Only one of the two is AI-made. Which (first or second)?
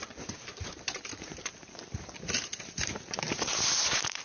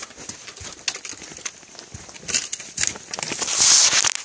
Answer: first